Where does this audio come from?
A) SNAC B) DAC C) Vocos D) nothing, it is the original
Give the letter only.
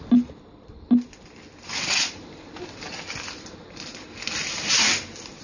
D